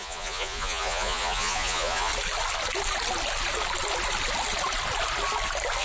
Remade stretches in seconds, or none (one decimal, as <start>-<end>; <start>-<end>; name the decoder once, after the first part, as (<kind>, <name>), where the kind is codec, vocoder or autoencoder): 0.0-2.1 (vocoder, Vocos)